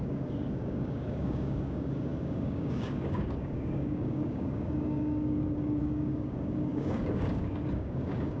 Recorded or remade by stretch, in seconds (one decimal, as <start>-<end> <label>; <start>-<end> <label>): 0.0-8.4 remade

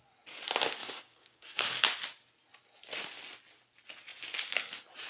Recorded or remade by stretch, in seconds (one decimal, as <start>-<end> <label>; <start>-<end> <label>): 0.0-0.8 recorded; 0.8-1.6 remade; 1.6-5.1 recorded